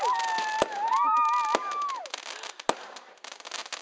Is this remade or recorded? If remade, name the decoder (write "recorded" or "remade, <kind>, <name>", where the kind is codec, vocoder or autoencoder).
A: recorded